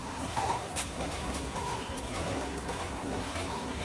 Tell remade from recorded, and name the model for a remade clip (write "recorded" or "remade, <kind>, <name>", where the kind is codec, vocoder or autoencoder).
remade, codec, SNAC